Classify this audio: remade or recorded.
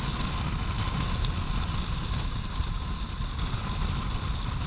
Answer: recorded